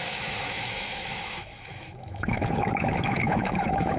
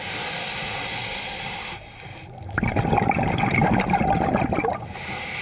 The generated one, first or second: first